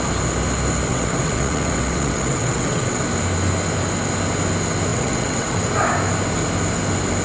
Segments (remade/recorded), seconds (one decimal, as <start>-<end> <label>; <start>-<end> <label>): 0.0-0.9 recorded; 0.9-3.0 remade; 3.0-4.9 recorded; 4.9-5.7 remade; 5.7-7.2 recorded